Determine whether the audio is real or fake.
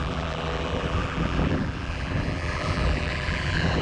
fake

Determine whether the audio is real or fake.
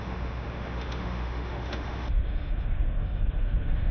fake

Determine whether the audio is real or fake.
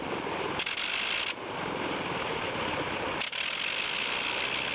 real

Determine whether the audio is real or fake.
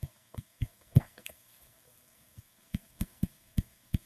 fake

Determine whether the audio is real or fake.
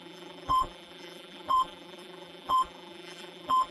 fake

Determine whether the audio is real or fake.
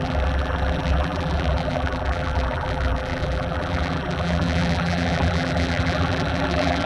fake